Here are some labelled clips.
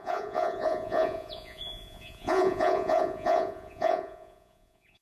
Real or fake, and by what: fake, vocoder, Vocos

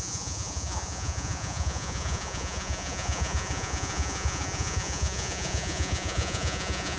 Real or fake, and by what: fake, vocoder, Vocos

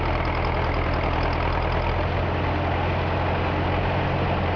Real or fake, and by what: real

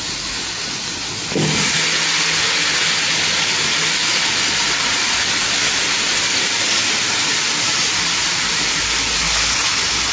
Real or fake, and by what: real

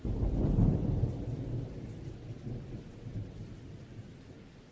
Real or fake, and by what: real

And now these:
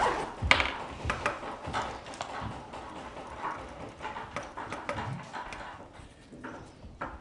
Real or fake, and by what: real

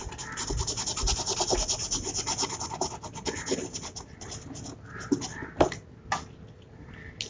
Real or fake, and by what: real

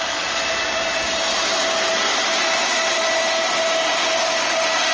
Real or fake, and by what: real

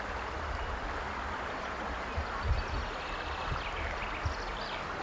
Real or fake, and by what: real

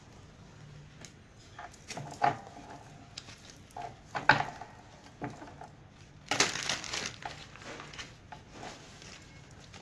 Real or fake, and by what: real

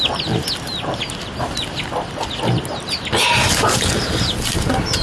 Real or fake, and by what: real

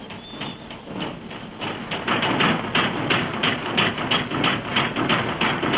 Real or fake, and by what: real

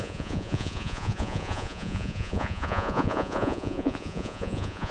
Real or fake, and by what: fake, vocoder, Vocos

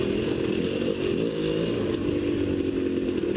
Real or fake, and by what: real